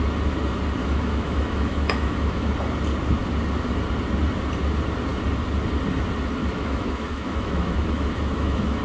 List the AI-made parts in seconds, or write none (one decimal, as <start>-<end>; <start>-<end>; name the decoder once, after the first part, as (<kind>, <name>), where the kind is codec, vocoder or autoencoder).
0.8-2.5 (autoencoder, DAC-VAE); 6.4-8.8